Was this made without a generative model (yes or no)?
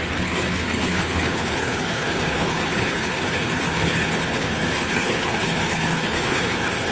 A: no